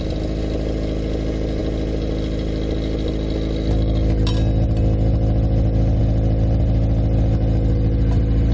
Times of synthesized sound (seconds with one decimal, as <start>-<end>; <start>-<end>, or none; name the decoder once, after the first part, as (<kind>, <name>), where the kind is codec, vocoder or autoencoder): none